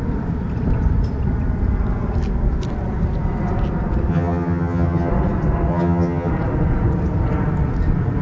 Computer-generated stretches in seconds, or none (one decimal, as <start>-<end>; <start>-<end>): 4.1-5.1; 5.7-6.3